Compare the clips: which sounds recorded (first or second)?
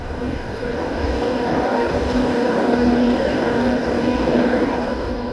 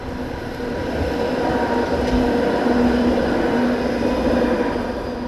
second